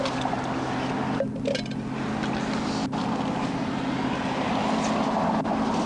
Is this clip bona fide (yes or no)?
yes